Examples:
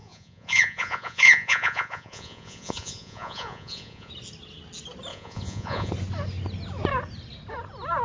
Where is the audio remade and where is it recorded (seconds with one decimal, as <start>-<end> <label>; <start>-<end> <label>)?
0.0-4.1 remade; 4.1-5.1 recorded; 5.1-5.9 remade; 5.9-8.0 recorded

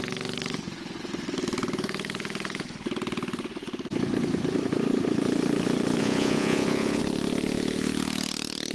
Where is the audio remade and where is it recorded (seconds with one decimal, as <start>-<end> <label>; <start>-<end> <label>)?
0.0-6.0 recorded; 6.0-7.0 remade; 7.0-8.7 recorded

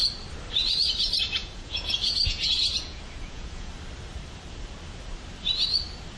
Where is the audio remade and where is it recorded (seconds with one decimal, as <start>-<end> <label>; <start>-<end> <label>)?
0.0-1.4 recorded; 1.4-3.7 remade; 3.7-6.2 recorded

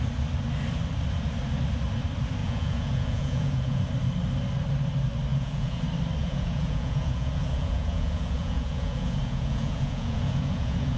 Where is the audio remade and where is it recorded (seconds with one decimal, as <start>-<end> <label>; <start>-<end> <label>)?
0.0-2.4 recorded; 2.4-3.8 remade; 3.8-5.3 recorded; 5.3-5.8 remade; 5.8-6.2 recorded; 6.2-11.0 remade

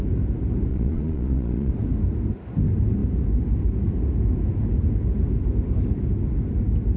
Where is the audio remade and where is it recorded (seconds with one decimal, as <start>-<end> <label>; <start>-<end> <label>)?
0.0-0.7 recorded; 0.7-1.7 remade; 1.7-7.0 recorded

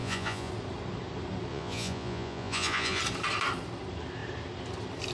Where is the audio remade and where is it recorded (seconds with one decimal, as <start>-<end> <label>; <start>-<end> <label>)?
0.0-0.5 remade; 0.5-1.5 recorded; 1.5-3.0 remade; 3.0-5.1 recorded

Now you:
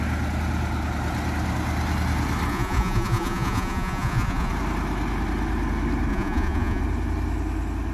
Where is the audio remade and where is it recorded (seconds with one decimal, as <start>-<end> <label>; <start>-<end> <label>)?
0.0-2.5 recorded; 2.5-4.5 remade; 4.5-6.1 recorded; 6.1-6.8 remade; 6.8-7.9 recorded

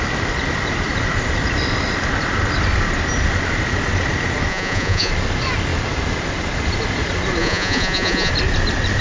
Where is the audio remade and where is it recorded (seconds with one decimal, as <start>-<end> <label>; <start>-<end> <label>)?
0.0-4.5 recorded; 4.5-5.1 remade; 5.1-7.4 recorded; 7.4-8.3 remade; 8.3-9.0 recorded